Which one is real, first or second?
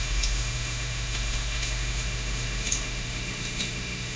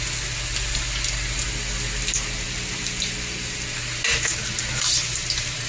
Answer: second